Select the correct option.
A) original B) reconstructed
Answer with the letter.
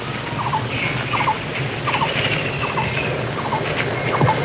A